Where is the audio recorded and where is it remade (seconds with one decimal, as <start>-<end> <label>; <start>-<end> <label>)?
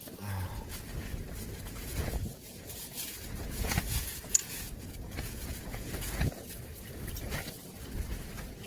0.0-1.4 recorded; 1.4-6.4 remade; 6.4-8.7 recorded